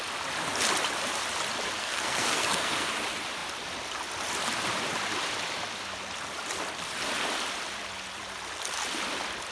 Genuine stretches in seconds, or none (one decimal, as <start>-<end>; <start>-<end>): 0.0-1.8; 2.9-9.5